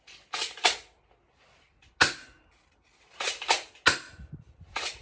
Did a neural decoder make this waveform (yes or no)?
no